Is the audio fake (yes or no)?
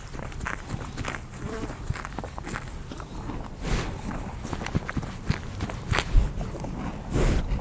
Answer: no